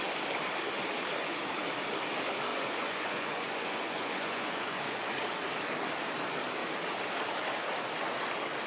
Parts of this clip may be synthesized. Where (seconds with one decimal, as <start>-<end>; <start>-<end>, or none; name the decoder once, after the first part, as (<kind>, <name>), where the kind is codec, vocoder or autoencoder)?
2.5-5.1 (vocoder, Vocos)